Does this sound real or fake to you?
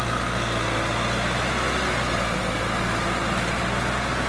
real